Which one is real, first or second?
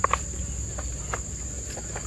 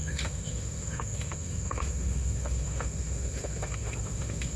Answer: first